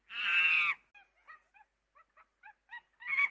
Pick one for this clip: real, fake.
real